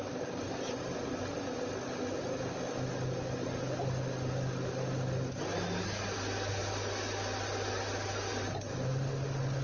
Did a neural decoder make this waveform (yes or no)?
no